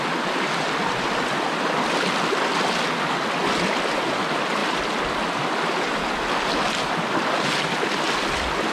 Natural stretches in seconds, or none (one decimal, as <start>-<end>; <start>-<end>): 0.0-8.7